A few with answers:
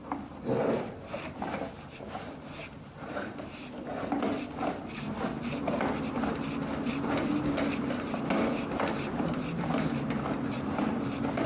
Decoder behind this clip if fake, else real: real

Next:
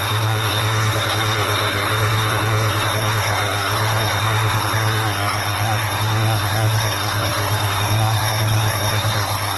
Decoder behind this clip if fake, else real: fake, codec, SNAC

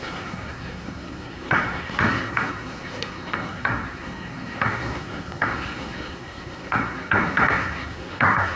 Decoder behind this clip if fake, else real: fake, codec, SNAC